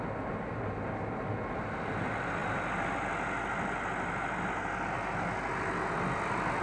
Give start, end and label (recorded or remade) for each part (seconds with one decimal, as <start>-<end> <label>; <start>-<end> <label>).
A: 0.0-2.4 recorded; 2.4-3.1 remade; 3.1-6.6 recorded